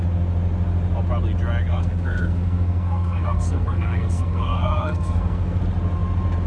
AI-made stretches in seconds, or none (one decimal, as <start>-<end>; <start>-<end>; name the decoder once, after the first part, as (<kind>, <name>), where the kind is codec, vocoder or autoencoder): 1.7-5.6 (codec, SNAC)